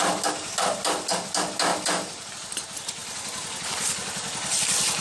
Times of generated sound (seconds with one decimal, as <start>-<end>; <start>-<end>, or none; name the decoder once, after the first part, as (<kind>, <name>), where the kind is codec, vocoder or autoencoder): none